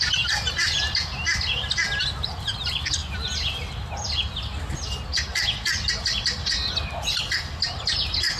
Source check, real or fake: real